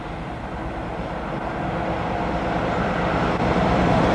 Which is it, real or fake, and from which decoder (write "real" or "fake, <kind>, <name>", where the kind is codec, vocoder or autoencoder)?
real